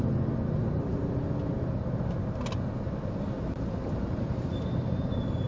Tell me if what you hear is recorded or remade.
recorded